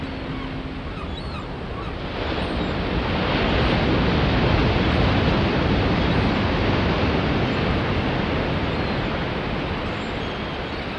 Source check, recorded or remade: recorded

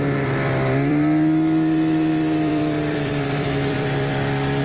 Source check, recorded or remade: remade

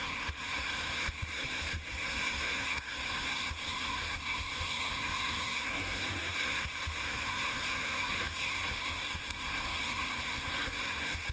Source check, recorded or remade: remade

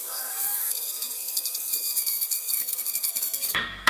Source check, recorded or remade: remade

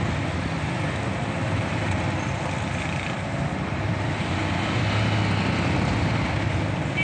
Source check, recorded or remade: recorded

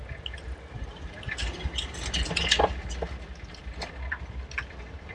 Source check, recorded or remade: recorded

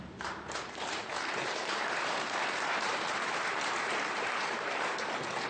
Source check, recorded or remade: remade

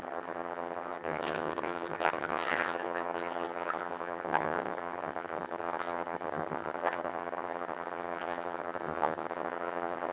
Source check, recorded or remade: remade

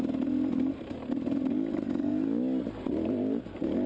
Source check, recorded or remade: recorded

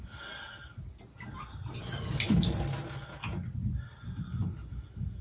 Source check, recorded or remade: recorded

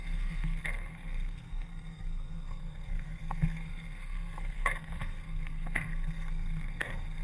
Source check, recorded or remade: remade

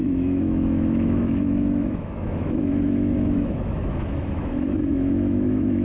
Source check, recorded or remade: remade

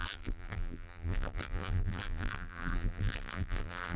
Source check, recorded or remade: remade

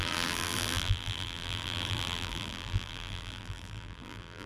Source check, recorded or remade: remade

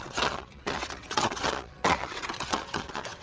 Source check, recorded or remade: remade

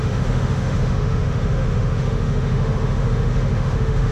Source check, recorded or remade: remade